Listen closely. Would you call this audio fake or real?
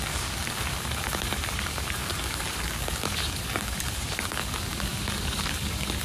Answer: fake